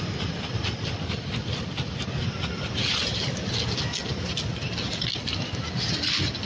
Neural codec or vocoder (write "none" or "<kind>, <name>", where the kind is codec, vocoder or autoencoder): none